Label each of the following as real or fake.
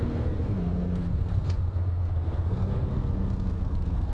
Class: fake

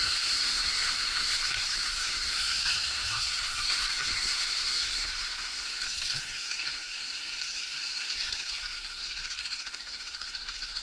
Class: fake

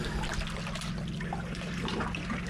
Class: real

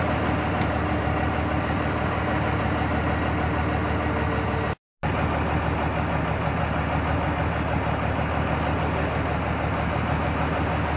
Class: real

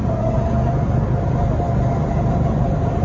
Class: real